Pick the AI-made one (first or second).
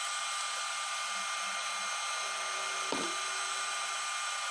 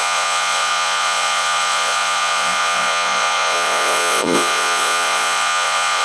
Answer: second